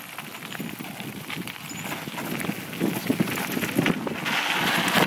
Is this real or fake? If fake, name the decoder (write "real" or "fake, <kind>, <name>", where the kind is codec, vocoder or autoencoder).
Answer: real